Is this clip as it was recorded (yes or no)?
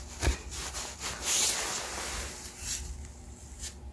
yes